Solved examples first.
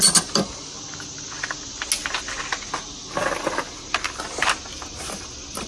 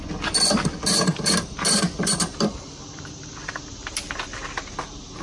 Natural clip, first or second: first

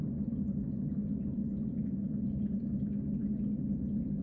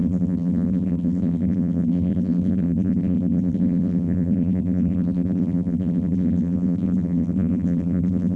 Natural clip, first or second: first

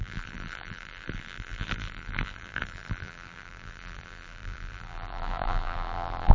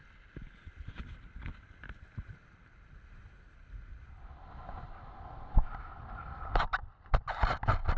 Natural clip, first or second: second